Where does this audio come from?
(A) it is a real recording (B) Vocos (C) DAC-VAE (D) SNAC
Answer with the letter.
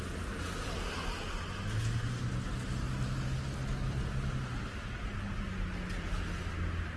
A